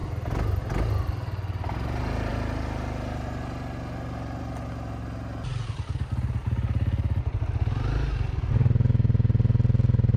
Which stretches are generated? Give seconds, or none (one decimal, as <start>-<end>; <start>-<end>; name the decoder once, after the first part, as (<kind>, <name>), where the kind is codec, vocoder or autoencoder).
none